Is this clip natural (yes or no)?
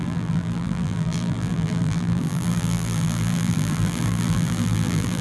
no